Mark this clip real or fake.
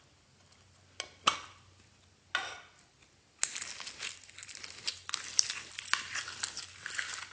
real